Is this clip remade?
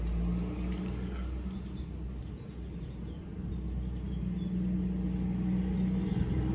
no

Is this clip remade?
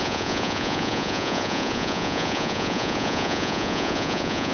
yes